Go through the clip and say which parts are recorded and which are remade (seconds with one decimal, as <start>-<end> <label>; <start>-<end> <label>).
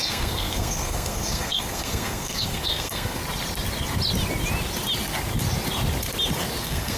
0.0-3.2 remade; 3.2-6.6 recorded; 6.6-7.0 remade